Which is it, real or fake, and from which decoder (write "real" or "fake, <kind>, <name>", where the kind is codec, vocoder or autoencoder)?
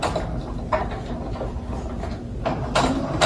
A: real